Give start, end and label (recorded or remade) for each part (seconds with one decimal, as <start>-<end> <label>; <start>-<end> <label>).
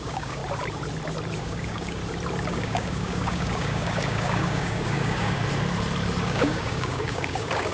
0.0-0.4 remade; 0.4-1.4 recorded; 1.4-2.0 remade; 2.0-2.5 recorded; 2.5-5.4 remade; 5.4-6.2 recorded; 6.2-7.7 remade